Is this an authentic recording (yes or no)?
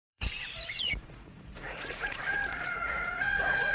no